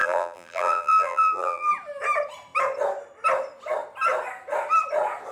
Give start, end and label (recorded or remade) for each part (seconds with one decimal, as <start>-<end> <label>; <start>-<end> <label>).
0.0-1.7 remade; 1.7-5.3 recorded